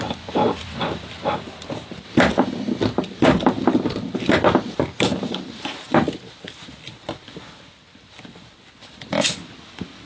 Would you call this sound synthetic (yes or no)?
yes